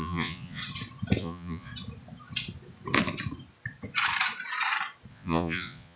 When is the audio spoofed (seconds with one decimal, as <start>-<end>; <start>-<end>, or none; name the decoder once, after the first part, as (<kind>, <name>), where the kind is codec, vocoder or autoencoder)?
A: 0.0-0.6 (vocoder, Vocos); 1.2-1.7; 5.1-6.0